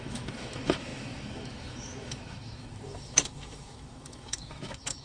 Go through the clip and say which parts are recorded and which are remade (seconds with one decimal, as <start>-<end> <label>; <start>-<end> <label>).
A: 0.0-5.0 remade